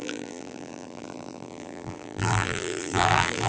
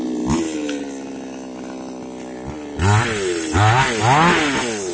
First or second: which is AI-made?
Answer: first